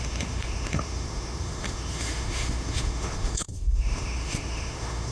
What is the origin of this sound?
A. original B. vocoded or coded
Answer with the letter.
B